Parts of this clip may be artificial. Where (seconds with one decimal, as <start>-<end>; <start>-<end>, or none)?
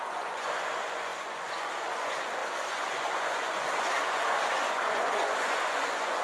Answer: 0.0-6.2